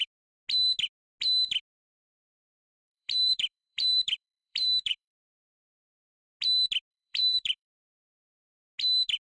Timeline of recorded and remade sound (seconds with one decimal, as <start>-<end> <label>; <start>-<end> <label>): 0.0-2.7 recorded; 2.7-5.9 remade; 5.9-6.9 recorded; 6.9-7.7 remade; 7.7-9.2 recorded